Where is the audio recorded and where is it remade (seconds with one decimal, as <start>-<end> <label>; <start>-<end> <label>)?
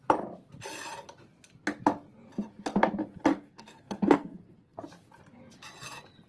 0.0-3.3 recorded; 3.3-4.8 remade; 4.8-6.3 recorded